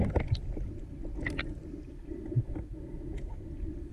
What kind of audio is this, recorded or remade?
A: recorded